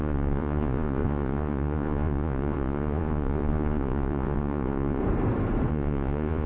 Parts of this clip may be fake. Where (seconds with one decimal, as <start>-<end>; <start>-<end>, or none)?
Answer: 0.0-5.0; 5.7-6.5